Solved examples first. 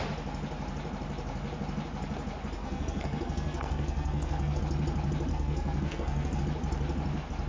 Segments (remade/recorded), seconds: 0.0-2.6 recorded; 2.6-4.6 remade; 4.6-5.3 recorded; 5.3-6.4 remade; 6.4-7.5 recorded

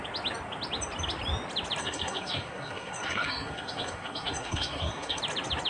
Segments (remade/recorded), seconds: 0.0-1.8 recorded; 1.8-5.2 remade; 5.2-5.7 recorded

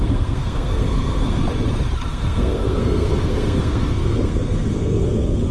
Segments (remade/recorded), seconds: 0.0-1.4 remade; 1.4-2.1 recorded; 2.1-5.5 remade